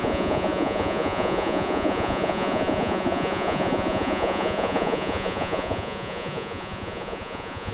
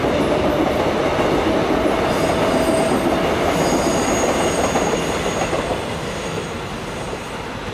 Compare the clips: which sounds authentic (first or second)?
second